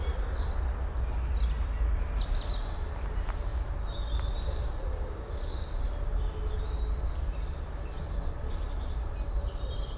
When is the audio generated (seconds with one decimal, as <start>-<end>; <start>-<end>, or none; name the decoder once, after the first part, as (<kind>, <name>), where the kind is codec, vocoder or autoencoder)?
none